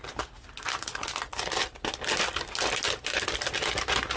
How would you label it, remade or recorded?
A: recorded